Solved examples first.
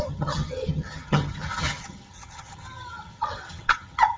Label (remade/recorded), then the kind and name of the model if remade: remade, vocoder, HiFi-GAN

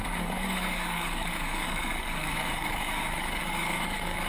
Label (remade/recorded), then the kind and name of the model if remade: remade, codec, DAC